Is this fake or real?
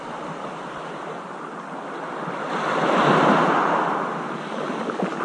real